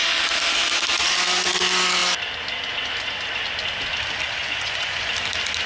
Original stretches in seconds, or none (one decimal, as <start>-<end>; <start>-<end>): 0.0-4.4; 5.1-5.7